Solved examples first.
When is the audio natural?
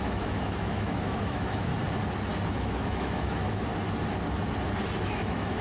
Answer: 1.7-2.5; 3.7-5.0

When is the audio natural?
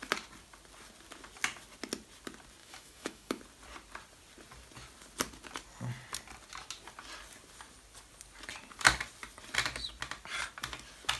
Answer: 0.0-2.6; 3.4-11.2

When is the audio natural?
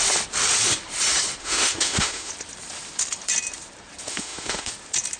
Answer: 0.0-1.4; 2.3-4.1; 4.7-5.2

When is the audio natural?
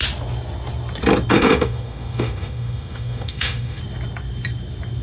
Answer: 0.0-1.3; 3.8-5.0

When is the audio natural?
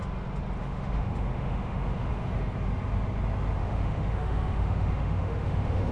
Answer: 0.0-0.6; 2.1-3.6